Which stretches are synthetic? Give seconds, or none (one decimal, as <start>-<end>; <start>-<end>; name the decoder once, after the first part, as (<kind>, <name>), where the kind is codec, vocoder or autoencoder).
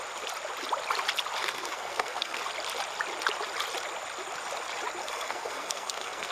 1.4-2.4 (codec, SNAC); 5.0-6.3